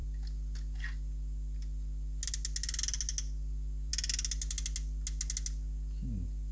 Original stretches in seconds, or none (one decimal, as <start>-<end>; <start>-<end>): 0.0-6.5